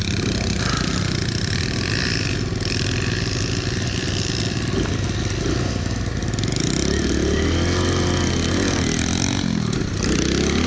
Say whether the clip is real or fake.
real